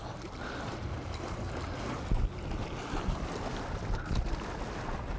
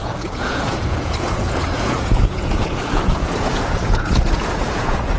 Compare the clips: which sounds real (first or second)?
first